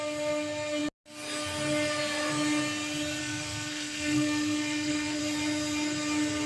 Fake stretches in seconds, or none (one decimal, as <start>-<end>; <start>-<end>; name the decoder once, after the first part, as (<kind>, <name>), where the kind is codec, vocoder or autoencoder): 3.2-5.2 (codec, SNAC)